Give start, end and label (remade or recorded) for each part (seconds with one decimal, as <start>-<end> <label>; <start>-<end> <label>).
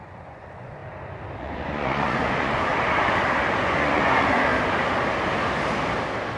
0.0-0.8 remade; 0.8-1.4 recorded; 1.4-2.7 remade; 2.7-3.5 recorded; 3.5-4.5 remade; 4.5-6.4 recorded